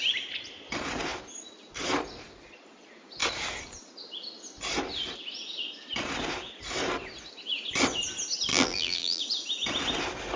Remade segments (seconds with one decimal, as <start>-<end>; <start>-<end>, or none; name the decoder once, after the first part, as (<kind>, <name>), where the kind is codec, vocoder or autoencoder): 8.5-9.2 (vocoder, BigVGAN v2)